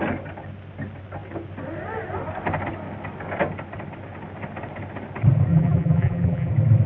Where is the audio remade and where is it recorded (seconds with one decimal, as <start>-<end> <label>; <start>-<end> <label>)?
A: 0.0-5.5 recorded; 5.5-6.5 remade; 6.5-6.9 recorded